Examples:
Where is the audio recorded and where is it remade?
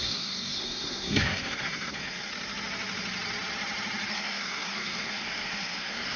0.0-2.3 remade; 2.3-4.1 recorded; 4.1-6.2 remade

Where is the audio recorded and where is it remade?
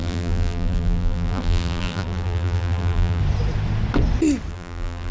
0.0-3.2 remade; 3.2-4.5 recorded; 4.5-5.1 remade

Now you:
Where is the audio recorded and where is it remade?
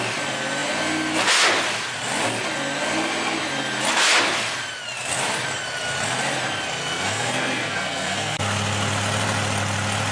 0.0-6.8 recorded; 6.8-8.4 remade; 8.4-10.1 recorded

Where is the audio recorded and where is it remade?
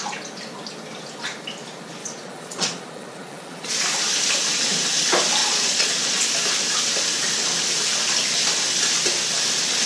0.0-2.0 recorded; 2.0-3.8 remade; 3.8-5.4 recorded; 5.4-6.3 remade; 6.3-9.9 recorded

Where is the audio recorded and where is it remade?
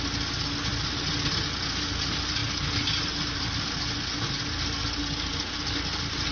0.0-6.3 recorded